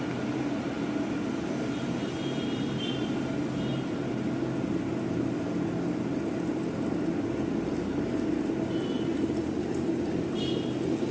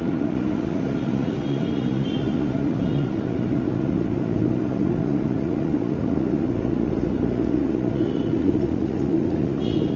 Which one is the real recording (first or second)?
first